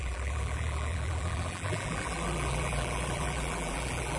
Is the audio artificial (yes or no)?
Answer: yes